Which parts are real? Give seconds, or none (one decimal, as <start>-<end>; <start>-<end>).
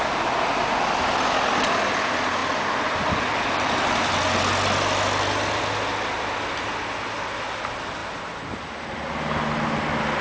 0.0-10.2